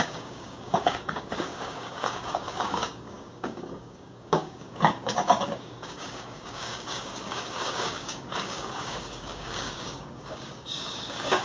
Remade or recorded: remade